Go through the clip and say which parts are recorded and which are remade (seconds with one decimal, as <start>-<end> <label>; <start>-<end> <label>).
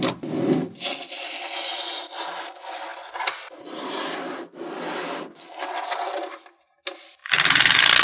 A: 0.0-8.0 recorded